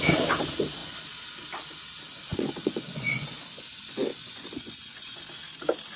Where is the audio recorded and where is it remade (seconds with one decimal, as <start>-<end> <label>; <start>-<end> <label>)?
0.0-2.3 recorded; 2.3-5.2 remade; 5.2-6.0 recorded